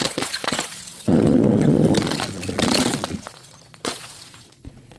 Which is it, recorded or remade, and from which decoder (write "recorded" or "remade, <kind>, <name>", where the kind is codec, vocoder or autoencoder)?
remade, vocoder, Vocos